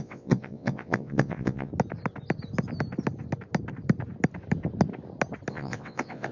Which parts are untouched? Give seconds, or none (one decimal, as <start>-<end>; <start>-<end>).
1.7-5.5